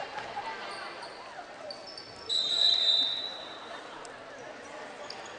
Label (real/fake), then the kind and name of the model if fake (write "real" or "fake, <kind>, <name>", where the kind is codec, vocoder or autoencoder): real